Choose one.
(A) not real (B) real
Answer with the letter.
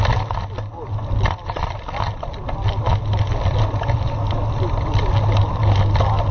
B